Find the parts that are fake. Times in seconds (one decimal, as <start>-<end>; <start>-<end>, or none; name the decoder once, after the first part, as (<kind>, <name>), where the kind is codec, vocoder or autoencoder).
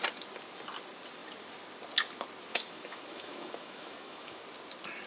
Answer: 2.5-4.4 (autoencoder, DAC-VAE)